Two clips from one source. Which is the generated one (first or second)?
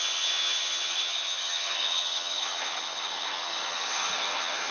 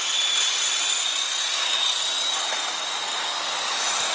first